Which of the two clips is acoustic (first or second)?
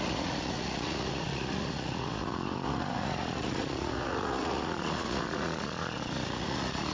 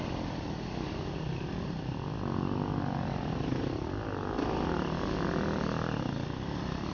second